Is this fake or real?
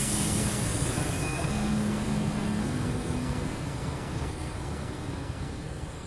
fake